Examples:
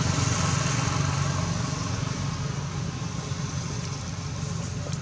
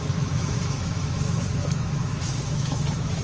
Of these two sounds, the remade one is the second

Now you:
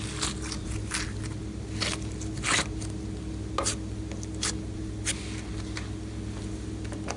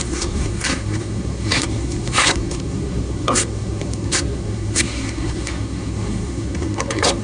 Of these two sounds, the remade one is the second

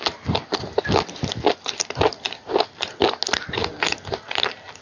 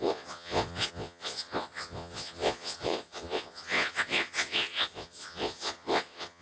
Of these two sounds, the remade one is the second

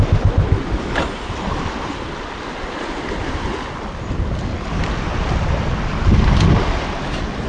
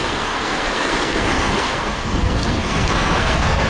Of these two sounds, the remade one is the second